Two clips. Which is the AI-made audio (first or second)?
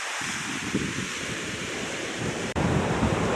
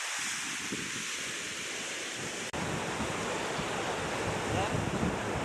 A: first